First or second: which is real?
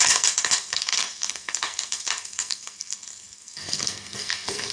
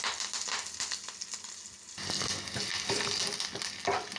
second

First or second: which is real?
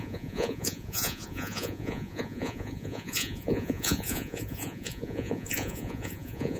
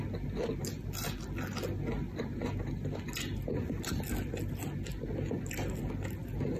second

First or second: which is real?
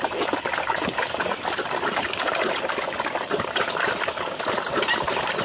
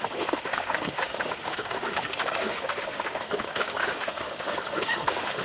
first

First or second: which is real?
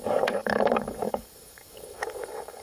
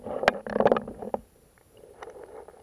second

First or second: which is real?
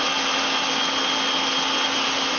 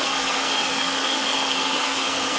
first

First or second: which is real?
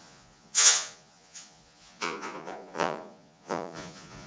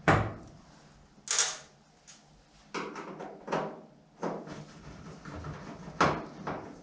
second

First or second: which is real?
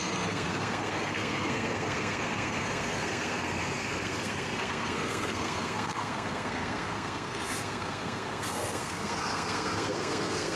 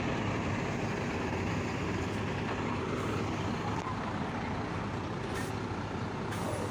second